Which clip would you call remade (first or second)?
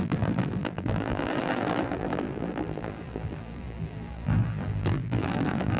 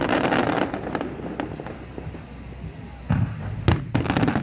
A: first